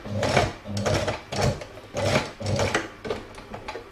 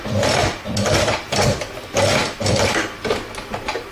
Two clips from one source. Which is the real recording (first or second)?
first